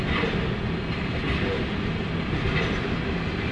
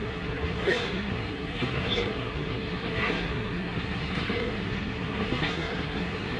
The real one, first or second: first